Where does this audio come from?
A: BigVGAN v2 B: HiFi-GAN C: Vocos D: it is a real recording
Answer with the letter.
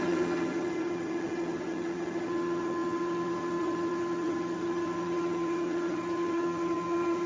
B